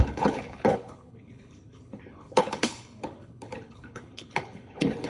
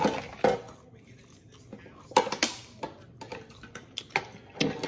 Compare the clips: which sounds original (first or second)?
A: second